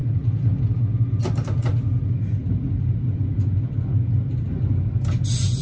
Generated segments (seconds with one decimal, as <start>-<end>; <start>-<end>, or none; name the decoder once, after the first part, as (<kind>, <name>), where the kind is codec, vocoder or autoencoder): none